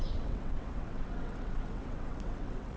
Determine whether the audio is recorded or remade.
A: remade